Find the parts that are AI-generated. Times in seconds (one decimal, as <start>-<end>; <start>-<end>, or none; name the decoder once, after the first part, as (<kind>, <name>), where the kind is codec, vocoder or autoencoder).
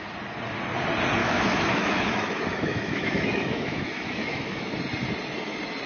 1.2-4.7 (autoencoder, DAC-VAE)